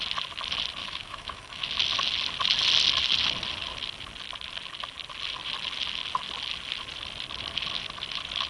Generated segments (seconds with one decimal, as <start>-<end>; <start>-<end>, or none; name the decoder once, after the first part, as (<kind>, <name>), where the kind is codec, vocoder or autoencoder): 0.8-1.7 (autoencoder, DAC-VAE)